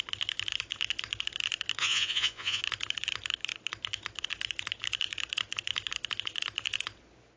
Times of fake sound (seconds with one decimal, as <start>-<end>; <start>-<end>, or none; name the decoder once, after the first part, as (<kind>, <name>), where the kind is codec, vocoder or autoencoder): 1.8-2.6 (vocoder, Vocos)